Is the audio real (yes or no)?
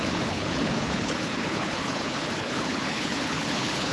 no